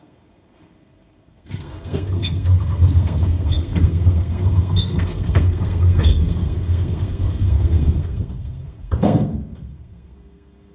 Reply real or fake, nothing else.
fake